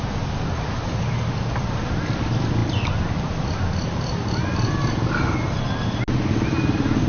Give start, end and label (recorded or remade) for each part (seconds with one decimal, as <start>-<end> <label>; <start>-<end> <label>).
0.0-7.1 recorded